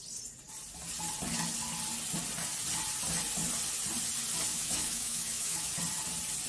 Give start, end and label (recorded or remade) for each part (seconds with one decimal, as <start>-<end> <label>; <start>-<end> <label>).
0.0-4.5 recorded; 4.5-5.7 remade; 5.7-6.5 recorded